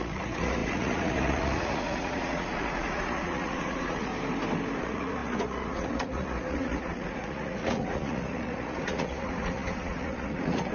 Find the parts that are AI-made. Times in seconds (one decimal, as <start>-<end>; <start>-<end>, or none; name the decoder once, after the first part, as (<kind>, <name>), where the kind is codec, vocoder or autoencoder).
0.0-4.1 (vocoder, Vocos); 4.8-10.7